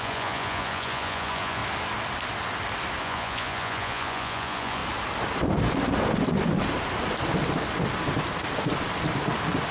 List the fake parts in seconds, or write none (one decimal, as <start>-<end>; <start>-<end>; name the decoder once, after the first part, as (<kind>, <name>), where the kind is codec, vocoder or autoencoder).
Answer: 0.0-1.6 (vocoder, Vocos); 3.0-4.8